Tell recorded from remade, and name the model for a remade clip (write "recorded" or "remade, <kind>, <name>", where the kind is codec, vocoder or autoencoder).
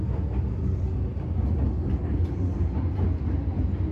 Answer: recorded